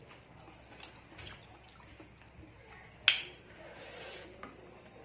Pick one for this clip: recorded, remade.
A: recorded